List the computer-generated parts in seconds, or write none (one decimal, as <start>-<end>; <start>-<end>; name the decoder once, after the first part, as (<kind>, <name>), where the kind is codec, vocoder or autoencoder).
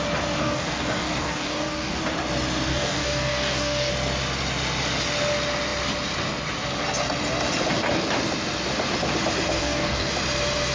0.4-2.0 (codec, DAC); 2.7-3.9; 9.6-10.1